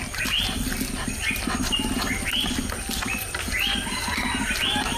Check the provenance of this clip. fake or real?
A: real